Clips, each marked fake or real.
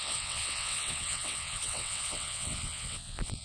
fake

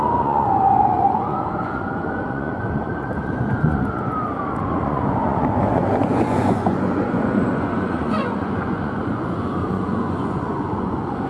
fake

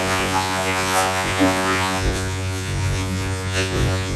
fake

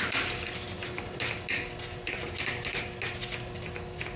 real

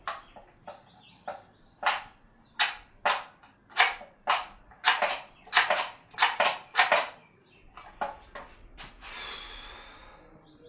real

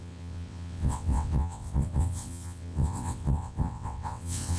fake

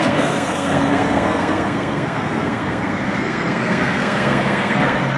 fake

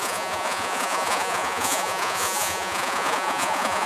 fake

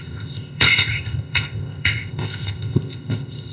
fake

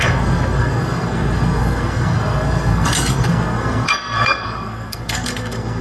fake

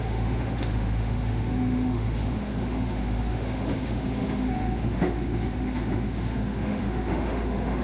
fake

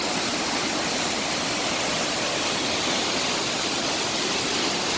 real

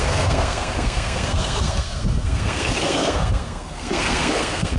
fake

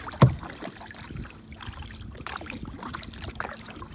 real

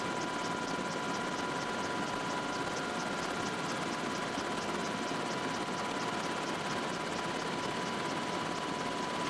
real